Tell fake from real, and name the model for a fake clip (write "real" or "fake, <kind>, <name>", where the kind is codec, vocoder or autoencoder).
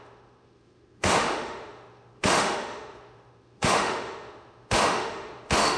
fake, autoencoder, DAC-VAE